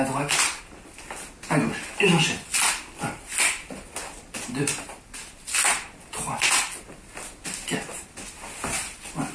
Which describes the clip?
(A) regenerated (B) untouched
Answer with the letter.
B